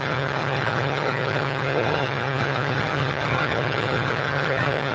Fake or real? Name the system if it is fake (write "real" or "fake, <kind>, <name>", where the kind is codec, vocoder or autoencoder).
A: fake, vocoder, HiFi-GAN